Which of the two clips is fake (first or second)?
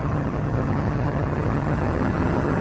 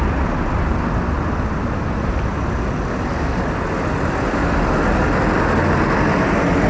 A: first